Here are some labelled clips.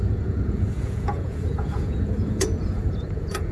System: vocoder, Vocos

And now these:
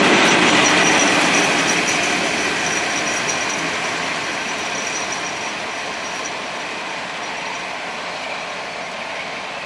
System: none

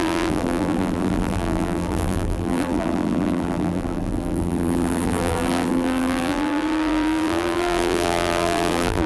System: vocoder, BigVGAN v2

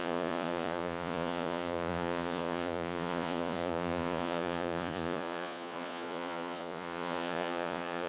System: vocoder, Vocos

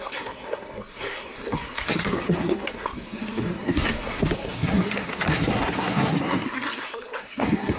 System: codec, SNAC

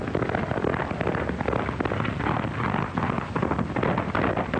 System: none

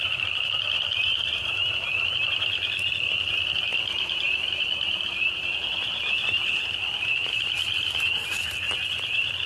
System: none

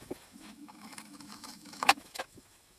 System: autoencoder, DAC-VAE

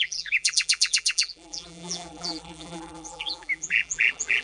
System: vocoder, BigVGAN v2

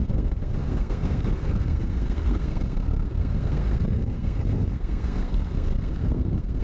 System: codec, SNAC